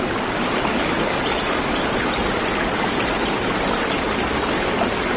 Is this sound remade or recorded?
recorded